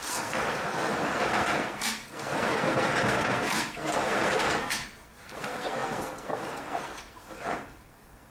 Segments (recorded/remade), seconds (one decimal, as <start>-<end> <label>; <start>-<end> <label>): 0.0-8.3 remade